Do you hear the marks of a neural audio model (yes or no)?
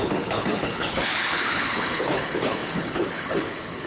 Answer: yes